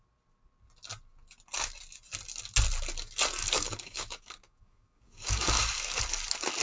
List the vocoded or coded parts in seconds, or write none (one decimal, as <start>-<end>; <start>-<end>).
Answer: 3.4-6.0